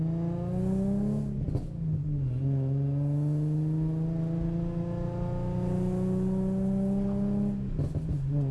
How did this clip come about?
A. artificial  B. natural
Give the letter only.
B